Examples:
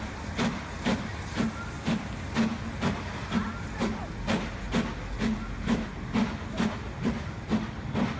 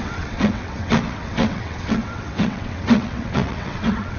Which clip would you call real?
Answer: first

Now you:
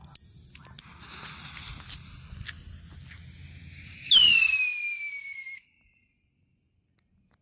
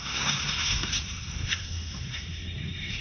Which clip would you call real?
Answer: first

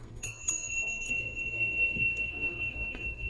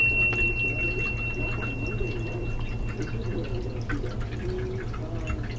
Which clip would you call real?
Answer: second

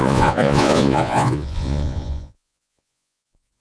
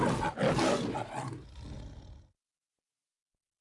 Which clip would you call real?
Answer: second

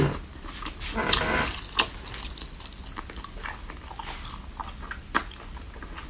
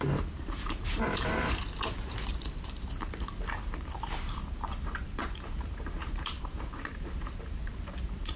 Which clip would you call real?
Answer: first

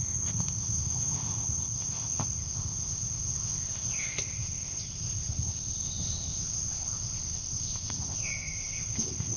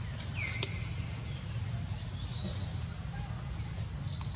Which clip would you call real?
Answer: second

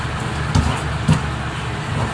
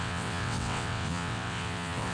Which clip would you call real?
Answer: first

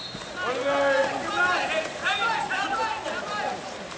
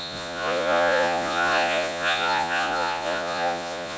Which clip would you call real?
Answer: first